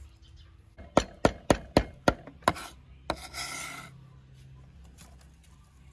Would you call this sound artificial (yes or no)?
no